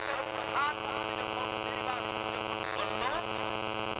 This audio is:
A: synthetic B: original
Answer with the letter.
B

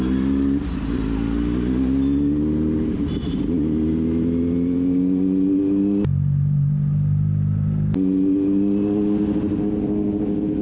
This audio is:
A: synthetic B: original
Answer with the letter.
B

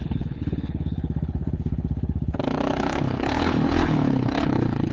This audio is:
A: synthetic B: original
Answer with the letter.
A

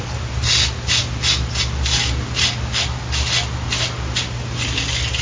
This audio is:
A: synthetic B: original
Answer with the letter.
B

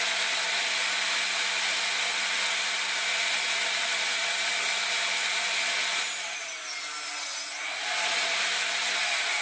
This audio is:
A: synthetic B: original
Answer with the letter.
B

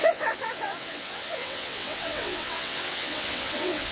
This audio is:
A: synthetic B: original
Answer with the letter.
A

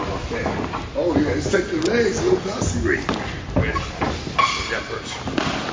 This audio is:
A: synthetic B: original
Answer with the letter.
B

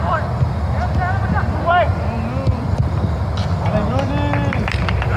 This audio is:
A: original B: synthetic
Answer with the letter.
A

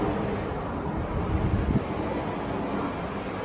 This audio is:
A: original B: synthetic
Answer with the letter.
A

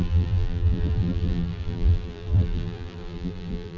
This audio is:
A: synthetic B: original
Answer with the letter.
A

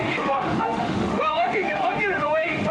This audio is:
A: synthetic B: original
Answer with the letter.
A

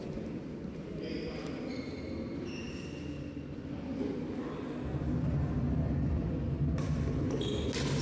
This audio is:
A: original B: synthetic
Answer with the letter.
A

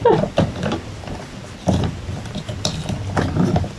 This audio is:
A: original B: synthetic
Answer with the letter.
B